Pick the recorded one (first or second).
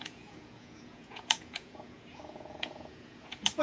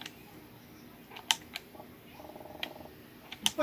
second